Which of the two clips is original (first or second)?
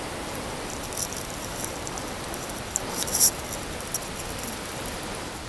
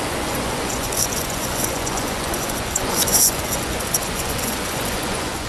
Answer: first